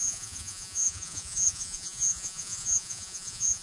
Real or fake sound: fake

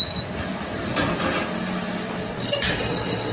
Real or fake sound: real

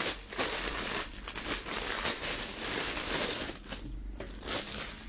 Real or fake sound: real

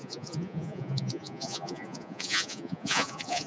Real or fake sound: fake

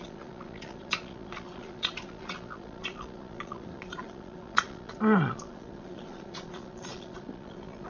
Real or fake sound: fake